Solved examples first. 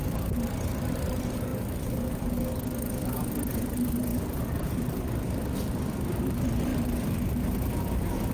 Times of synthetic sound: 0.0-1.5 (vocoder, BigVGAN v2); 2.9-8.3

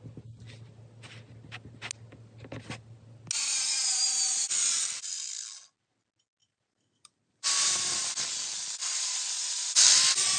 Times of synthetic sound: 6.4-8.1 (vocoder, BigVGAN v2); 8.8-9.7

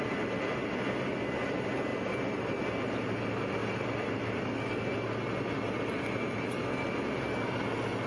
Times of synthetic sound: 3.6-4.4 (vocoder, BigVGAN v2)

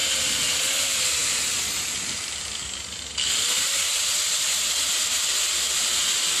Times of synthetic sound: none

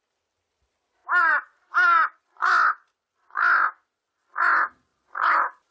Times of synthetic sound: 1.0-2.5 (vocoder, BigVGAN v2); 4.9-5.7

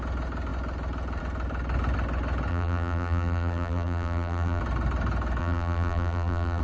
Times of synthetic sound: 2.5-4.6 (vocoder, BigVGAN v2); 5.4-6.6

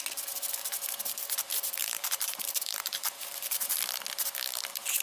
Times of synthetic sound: 1.8-3.8 (vocoder, BigVGAN v2)